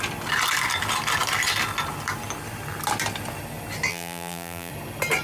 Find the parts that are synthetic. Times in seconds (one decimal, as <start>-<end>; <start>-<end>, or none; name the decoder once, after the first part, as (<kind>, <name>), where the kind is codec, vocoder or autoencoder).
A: 3.9-4.7 (vocoder, BigVGAN v2)